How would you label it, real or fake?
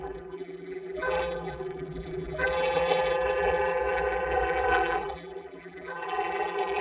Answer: fake